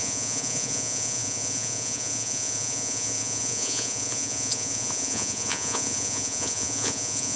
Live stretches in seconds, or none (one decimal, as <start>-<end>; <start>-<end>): none